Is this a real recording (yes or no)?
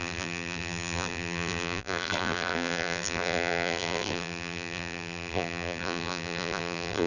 no